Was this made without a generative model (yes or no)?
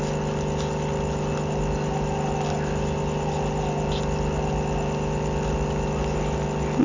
yes